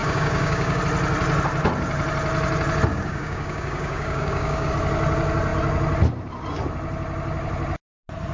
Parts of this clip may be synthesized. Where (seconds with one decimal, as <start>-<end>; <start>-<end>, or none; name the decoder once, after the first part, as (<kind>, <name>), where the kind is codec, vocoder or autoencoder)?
0.0-0.8 (codec, DAC); 2.9-4.7